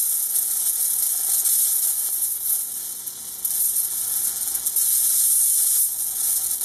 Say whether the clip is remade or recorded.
recorded